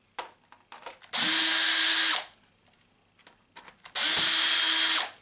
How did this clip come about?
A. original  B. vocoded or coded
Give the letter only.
A